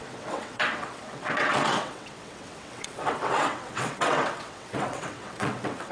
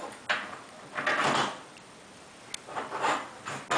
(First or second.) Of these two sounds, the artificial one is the first